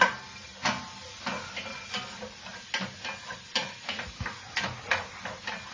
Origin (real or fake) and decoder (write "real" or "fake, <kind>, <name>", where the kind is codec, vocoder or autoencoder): real